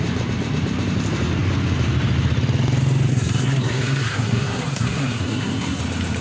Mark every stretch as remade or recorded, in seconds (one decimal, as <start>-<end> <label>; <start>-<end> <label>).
0.0-3.1 recorded; 3.1-5.8 remade; 5.8-6.2 recorded